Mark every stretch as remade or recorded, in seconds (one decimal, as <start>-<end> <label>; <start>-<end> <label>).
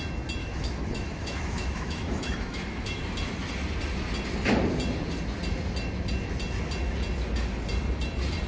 0.0-0.4 recorded; 0.4-3.0 remade; 3.0-8.5 recorded